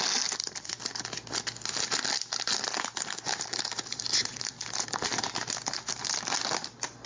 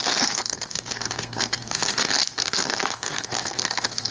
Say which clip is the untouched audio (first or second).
first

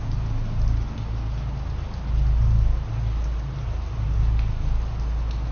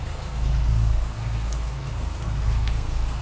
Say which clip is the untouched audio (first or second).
first